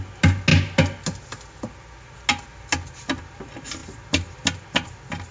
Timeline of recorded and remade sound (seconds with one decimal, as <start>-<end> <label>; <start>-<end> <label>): 0.0-5.3 recorded